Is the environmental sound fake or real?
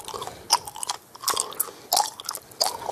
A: real